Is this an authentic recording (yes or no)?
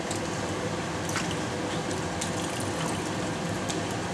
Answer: yes